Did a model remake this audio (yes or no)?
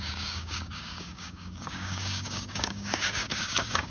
yes